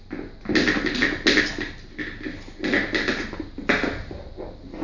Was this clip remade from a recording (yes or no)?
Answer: no